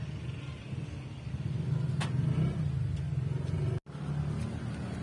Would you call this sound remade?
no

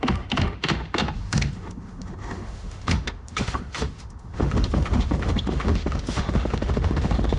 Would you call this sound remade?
yes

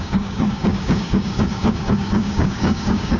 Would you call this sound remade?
yes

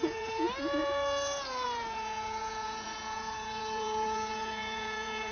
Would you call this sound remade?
yes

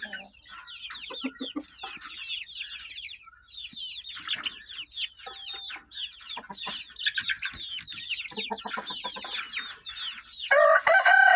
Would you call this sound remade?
no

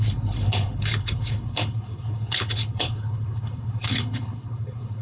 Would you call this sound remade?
yes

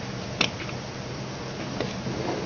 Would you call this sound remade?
no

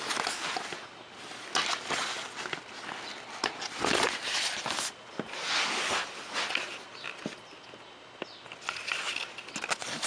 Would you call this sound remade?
no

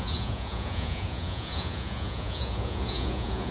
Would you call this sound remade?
yes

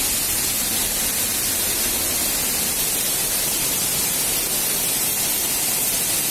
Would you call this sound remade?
no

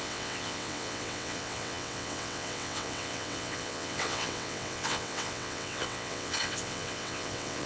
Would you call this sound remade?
yes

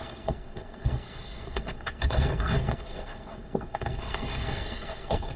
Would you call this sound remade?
yes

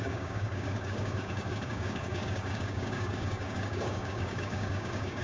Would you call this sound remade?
yes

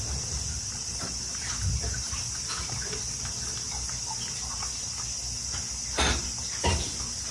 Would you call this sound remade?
no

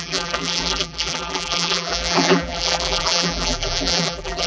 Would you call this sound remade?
yes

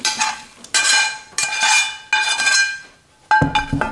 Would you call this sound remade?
no